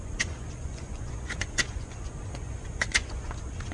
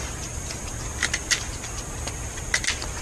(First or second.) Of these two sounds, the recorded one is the second